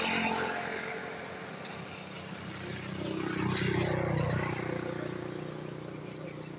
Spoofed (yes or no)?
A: no